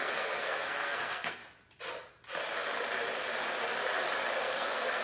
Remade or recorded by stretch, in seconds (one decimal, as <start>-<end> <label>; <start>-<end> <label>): 0.0-1.4 remade; 1.4-4.4 recorded; 4.4-5.0 remade